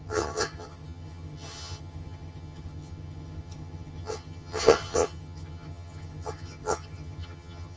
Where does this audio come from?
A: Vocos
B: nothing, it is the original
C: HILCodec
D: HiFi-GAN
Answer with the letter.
D